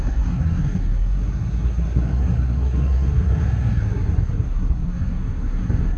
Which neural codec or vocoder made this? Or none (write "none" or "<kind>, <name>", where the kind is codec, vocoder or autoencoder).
codec, SNAC